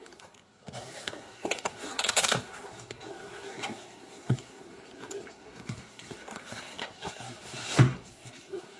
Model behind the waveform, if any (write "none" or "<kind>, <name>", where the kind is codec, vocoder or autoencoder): codec, SNAC